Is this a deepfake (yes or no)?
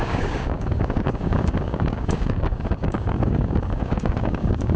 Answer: yes